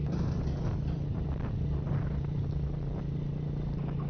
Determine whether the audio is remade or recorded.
recorded